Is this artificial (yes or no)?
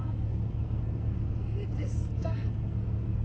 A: yes